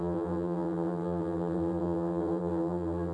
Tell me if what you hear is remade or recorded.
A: remade